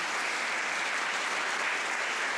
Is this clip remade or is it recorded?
recorded